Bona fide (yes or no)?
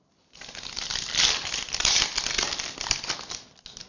yes